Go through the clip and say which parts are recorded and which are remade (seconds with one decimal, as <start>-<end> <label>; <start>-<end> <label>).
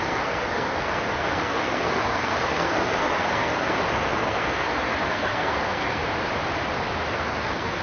0.0-6.0 remade; 6.0-7.1 recorded; 7.1-7.8 remade